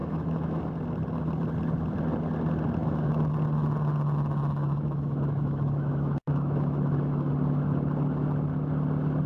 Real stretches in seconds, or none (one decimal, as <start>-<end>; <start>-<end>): 0.6-2.8; 3.3-4.6; 7.3-9.3